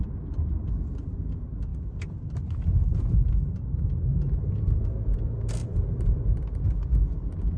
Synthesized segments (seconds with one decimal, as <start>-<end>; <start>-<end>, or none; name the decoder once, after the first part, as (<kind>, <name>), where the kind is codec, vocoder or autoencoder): 1.7-3.5 (vocoder, BigVGAN v2); 4.1-4.7; 5.6-6.6